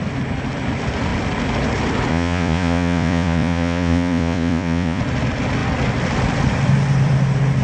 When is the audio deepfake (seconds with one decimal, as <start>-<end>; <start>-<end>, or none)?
2.1-5.0